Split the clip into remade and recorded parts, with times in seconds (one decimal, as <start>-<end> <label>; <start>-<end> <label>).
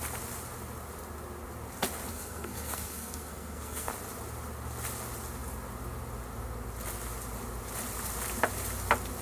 0.0-2.1 recorded; 2.1-3.9 remade; 3.9-9.2 recorded